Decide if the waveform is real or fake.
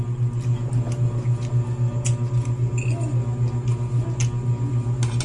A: real